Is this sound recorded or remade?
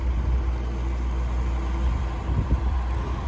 recorded